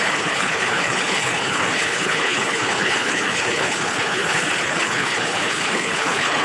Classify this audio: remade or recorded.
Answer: remade